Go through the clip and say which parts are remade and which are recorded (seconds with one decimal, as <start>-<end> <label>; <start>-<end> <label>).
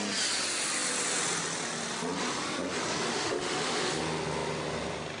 0.0-3.1 recorded; 3.1-4.0 remade; 4.0-5.2 recorded